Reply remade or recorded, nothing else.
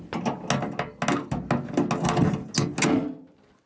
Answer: recorded